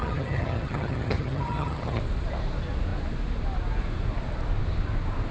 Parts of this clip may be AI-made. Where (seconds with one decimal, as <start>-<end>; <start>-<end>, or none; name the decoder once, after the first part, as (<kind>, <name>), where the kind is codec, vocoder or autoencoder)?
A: 0.0-2.0 (vocoder, HiFi-GAN)